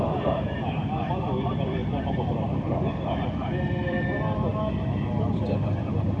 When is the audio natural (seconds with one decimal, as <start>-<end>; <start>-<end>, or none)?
4.5-5.3